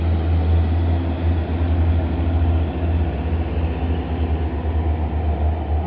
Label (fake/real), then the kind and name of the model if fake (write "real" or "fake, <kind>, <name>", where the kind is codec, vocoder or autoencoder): real